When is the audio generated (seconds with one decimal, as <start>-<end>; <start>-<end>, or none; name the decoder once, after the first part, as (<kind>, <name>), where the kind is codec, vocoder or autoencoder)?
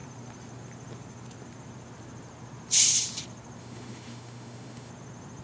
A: 3.6-4.9 (autoencoder, DAC-VAE)